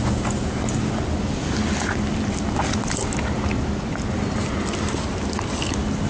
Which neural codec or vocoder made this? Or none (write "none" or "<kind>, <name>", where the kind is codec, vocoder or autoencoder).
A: none